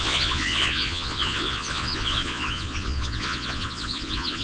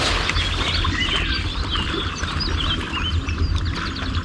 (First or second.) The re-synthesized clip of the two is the first